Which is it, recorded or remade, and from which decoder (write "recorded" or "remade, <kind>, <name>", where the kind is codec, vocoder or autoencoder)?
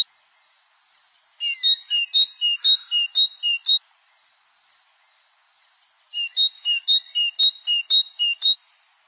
recorded